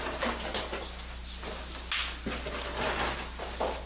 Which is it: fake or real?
real